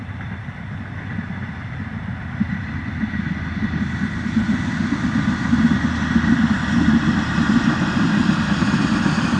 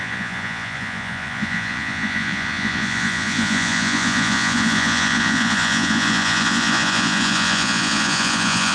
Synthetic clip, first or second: second